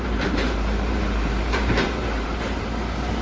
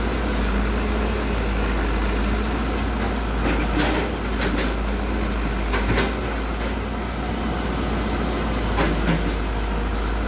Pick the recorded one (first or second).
second